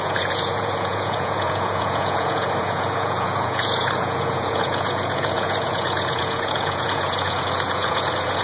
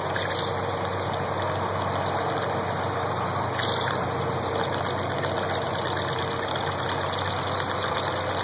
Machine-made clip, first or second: first